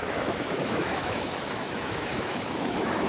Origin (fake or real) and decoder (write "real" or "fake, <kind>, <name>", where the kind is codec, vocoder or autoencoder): fake, autoencoder, DAC-VAE